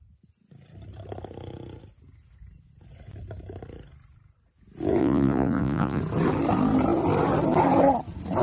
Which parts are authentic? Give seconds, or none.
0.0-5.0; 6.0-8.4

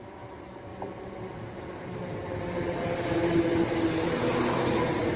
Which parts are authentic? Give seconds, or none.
0.0-5.2

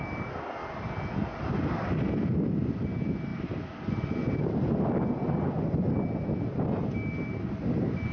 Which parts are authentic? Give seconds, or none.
0.0-8.1

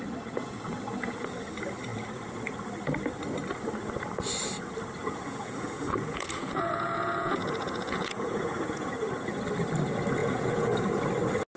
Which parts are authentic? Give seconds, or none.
0.0-5.0; 8.9-10.2; 11.0-11.6

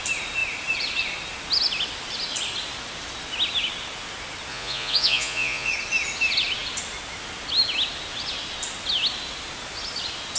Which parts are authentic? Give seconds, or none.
0.0-4.5; 5.7-10.4